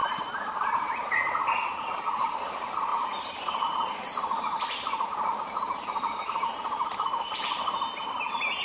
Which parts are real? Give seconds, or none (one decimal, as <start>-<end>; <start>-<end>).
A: 1.3-2.9; 7.6-8.6